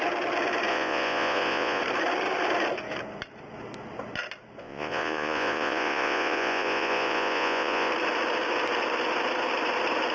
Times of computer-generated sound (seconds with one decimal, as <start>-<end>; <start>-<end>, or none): 0.7-1.8; 4.6-7.9